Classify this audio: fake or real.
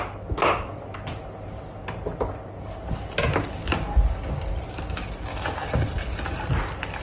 real